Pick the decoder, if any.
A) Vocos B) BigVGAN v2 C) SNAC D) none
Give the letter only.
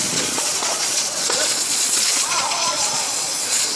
A